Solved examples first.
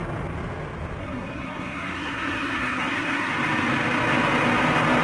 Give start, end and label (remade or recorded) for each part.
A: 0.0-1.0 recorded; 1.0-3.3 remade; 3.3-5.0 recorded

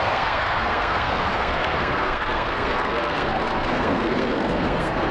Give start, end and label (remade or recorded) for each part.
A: 0.0-5.1 remade

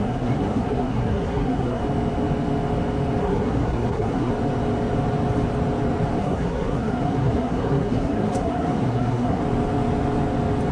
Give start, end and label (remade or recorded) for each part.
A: 0.0-1.8 remade; 1.8-3.2 recorded; 3.2-4.3 remade; 4.3-6.2 recorded; 6.2-9.4 remade; 9.4-10.7 recorded

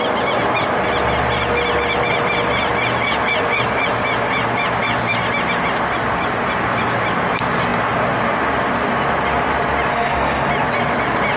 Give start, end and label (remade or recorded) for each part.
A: 0.0-9.9 recorded; 9.9-10.5 remade; 10.5-11.4 recorded